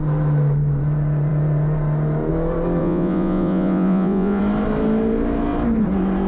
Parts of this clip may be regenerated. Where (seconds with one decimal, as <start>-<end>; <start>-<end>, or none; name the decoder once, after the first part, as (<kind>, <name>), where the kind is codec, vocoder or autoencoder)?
2.8-4.4 (vocoder, Vocos)